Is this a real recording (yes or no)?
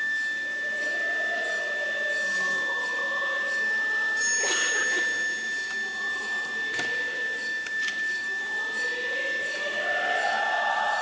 yes